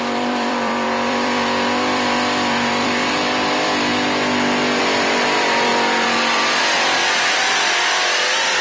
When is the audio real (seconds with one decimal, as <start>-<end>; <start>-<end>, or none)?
3.9-4.8; 5.7-6.6